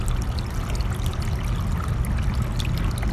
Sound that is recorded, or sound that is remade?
recorded